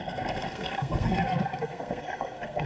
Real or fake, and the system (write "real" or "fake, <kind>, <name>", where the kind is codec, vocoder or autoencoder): fake, codec, SNAC